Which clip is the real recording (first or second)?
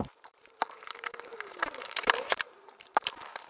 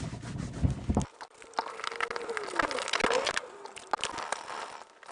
second